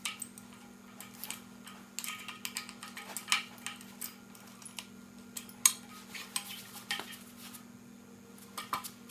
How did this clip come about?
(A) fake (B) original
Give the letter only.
B